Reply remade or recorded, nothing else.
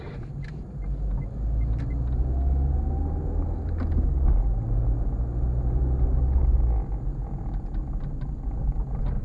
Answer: recorded